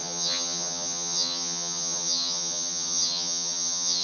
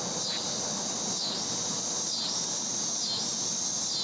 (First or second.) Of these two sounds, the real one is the second